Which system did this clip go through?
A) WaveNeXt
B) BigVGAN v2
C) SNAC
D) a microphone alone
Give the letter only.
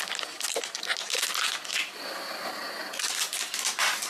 D